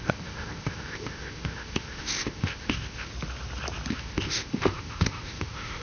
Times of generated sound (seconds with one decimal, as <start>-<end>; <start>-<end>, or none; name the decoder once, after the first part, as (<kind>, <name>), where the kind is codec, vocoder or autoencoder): 0.0-3.1 (codec, ZipCodec); 3.9-5.8